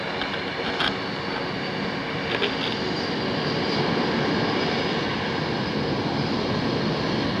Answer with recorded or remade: recorded